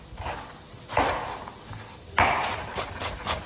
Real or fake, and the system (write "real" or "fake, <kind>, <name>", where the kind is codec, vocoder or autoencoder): real